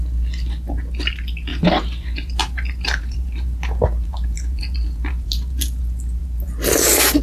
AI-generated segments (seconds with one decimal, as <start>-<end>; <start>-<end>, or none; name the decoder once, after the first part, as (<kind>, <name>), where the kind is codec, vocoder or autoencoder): 1.5-5.8 (vocoder, BigVGAN v2); 6.2-7.2